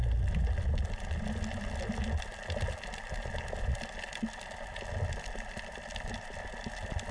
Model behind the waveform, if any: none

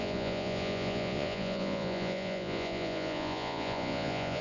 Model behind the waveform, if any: vocoder, Vocos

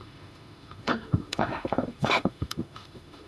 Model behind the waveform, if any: autoencoder, DAC-VAE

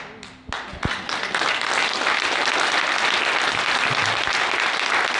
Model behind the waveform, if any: none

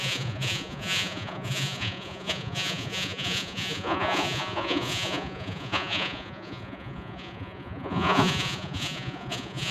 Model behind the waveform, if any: vocoder, Vocos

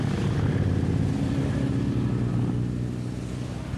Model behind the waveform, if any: none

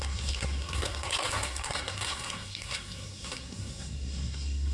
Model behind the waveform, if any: codec, SNAC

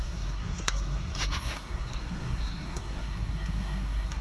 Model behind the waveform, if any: codec, SNAC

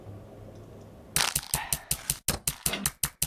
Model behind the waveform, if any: none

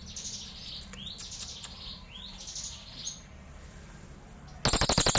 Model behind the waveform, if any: none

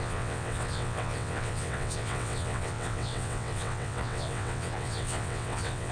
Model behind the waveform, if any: vocoder, WaveNeXt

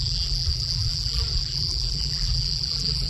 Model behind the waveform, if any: vocoder, BigVGAN v2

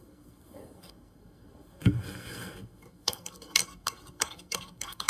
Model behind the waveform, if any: codec, SNAC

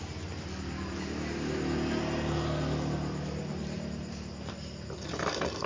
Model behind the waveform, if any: none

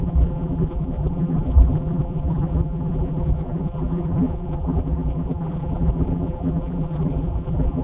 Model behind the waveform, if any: vocoder, BigVGAN v2